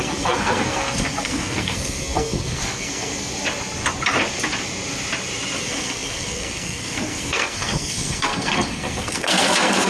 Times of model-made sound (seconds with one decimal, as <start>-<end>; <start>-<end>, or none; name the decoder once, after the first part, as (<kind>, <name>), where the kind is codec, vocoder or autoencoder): 0.0-3.3 (codec, SNAC); 5.6-9.9